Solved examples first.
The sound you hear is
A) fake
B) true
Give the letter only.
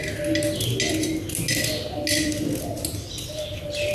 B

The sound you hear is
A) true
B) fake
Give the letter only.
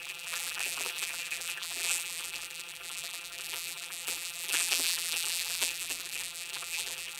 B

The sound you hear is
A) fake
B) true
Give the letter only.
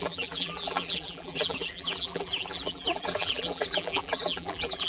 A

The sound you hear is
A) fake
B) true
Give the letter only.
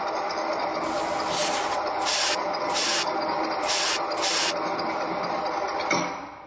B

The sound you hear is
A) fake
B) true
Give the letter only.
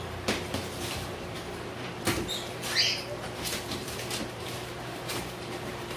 A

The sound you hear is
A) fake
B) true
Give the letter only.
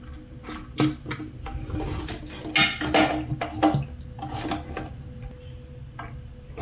B